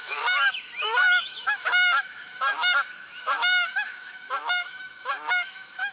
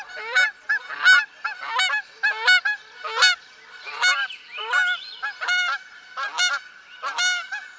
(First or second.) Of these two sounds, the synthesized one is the first